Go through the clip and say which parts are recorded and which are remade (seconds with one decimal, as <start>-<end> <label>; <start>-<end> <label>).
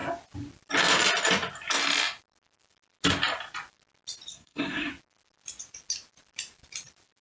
0.0-4.3 recorded; 4.3-4.9 remade; 4.9-7.2 recorded